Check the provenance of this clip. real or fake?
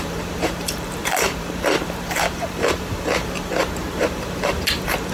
fake